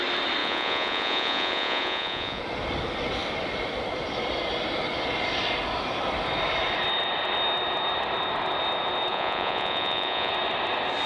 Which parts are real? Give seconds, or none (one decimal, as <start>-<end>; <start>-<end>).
0.0-0.4; 2.4-9.1; 10.3-11.1